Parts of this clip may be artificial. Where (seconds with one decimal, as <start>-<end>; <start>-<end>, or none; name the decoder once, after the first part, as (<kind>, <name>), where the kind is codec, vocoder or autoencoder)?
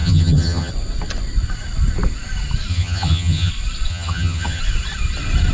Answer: 0.0-0.7 (vocoder, HiFi-GAN); 2.7-3.5; 3.9-4.6